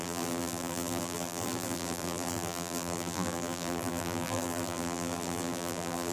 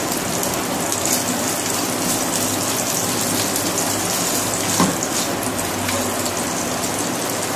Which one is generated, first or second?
first